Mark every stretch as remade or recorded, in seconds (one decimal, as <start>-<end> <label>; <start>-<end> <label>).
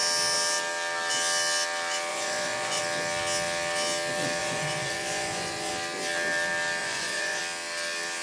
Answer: 0.0-2.1 recorded; 2.1-2.8 remade; 2.8-4.4 recorded; 4.4-5.7 remade; 5.7-6.8 recorded; 6.8-7.4 remade; 7.4-8.2 recorded